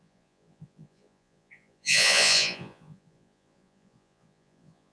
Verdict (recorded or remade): remade